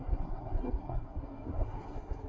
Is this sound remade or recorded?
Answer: remade